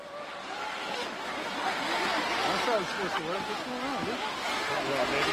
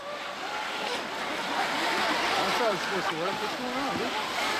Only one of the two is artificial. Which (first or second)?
second